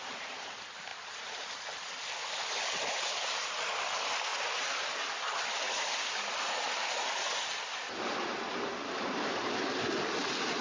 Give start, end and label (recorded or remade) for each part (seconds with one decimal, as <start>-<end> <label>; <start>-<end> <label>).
0.0-10.6 recorded